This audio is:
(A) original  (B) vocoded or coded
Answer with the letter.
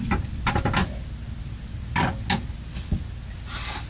A